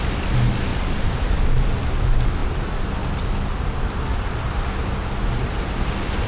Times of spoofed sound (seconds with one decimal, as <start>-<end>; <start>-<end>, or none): 0.7-1.2